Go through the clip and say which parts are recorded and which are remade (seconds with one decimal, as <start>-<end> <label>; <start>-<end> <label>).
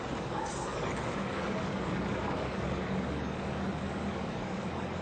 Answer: 0.0-5.0 remade